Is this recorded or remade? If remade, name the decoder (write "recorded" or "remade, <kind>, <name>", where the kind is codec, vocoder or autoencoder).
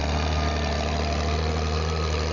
recorded